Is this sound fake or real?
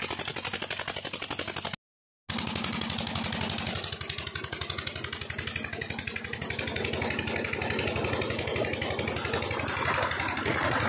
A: real